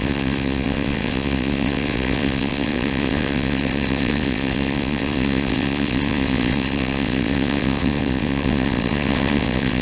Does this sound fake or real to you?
fake